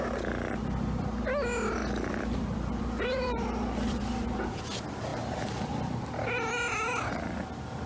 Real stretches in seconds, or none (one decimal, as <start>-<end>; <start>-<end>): 0.0-1.8; 4.6-5.1; 7.1-7.9